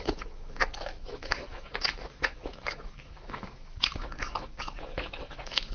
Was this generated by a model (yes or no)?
yes